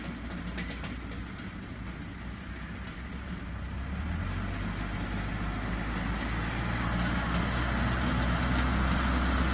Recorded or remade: recorded